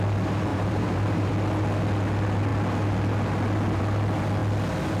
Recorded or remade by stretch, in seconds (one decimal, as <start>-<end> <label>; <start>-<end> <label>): 0.0-0.5 recorded; 0.5-1.3 remade; 1.3-5.0 recorded